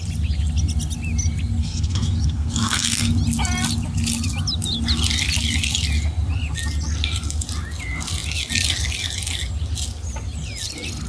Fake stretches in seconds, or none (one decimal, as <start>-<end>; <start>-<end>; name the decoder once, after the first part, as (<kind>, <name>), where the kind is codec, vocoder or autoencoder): 1.6-3.1 (codec, SNAC)